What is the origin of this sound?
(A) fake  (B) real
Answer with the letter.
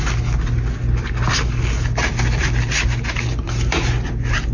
B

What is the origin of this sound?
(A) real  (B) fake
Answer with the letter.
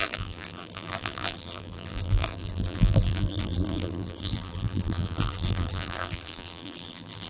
B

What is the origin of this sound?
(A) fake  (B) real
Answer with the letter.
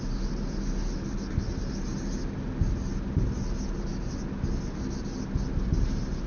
B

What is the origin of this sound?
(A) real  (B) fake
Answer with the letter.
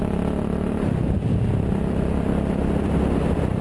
A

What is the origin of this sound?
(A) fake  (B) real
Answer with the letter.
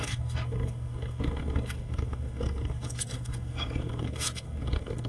A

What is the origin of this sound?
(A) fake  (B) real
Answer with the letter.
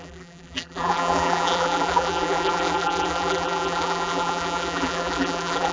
A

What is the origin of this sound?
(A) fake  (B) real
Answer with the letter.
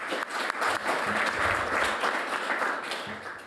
B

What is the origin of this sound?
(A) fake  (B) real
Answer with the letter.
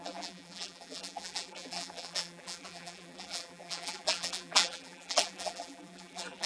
A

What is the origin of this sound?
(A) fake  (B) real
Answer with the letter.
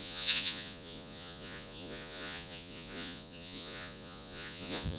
A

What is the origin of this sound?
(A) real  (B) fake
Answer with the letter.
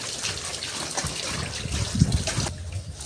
A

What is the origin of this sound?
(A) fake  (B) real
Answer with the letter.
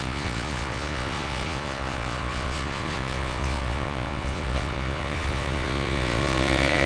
A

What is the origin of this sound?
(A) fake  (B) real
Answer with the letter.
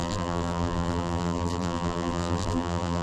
A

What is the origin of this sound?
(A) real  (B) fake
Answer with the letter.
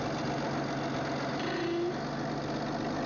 A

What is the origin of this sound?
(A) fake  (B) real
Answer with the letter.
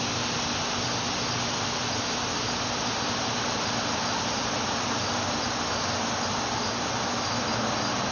B